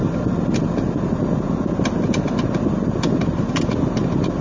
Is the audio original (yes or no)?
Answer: yes